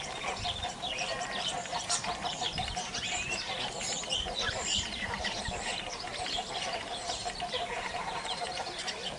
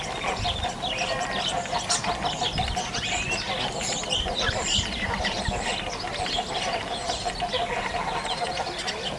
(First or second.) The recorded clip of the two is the second